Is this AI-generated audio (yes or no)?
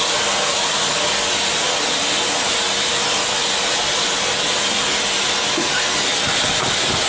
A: no